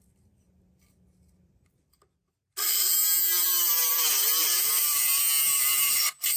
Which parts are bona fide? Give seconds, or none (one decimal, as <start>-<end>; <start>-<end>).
0.0-6.4